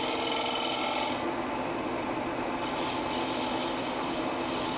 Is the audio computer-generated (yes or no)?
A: no